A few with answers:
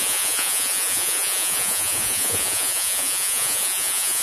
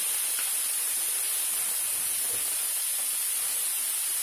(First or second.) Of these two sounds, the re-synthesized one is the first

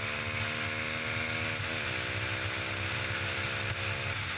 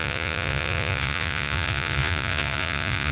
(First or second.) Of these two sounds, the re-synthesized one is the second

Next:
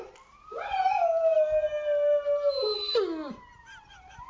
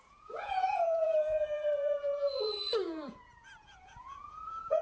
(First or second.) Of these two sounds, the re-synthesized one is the second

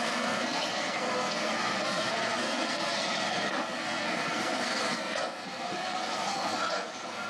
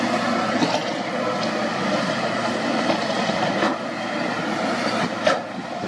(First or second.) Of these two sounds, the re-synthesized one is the first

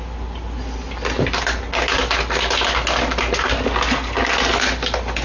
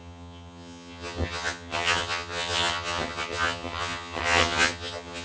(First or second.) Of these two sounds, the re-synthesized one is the second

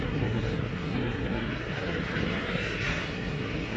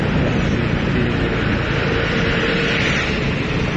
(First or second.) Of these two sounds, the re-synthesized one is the first